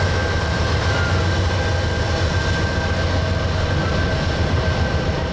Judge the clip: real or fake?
real